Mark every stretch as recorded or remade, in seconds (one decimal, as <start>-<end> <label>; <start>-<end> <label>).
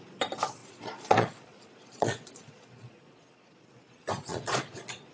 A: 0.0-0.6 recorded; 0.6-3.5 remade; 3.5-4.3 recorded; 4.3-5.1 remade